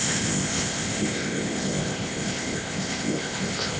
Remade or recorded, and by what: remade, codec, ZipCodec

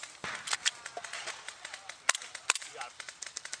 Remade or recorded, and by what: recorded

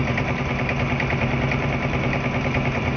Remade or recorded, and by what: remade, vocoder, BigVGAN v2